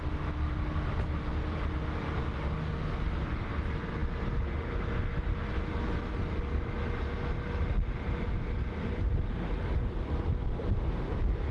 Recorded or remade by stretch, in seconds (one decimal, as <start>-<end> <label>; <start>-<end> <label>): 0.0-11.5 recorded